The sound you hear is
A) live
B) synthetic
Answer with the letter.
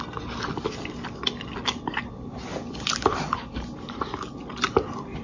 A